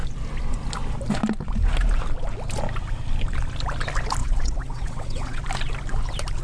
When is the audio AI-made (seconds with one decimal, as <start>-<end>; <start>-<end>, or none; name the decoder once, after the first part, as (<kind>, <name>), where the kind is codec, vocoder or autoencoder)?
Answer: 4.2-5.4 (vocoder, WaveNeXt)